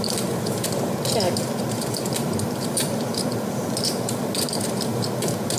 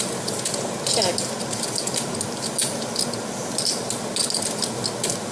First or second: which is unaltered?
second